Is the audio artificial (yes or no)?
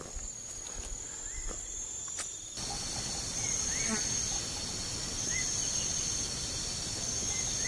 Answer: no